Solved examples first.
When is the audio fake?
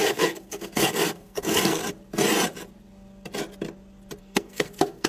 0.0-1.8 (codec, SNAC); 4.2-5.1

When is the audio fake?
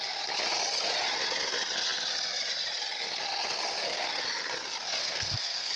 5.0-5.8 (codec, SNAC)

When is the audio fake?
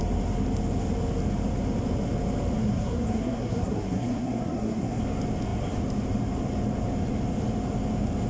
2.6-5.0 (codec, SNAC)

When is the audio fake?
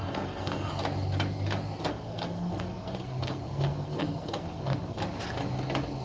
0.0-0.7 (codec, SNAC); 1.9-5.0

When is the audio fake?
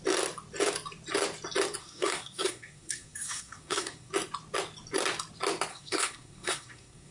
1.8-4.1 (codec, SNAC); 5.7-7.1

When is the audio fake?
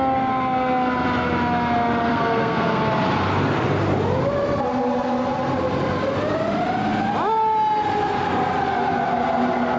2.1-2.8 (codec, SNAC)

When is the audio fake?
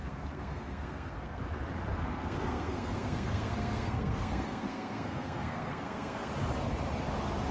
0.0-1.4 (codec, SNAC); 1.9-6.3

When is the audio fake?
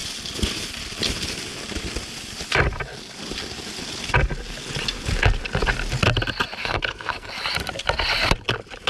6.6-7.3 (codec, SNAC)